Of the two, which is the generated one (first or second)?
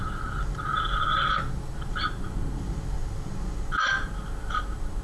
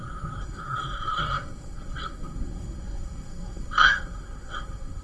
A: second